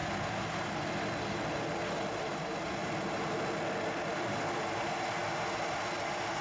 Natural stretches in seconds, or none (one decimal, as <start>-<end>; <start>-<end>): 0.0-6.4